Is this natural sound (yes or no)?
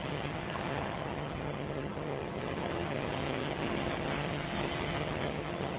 no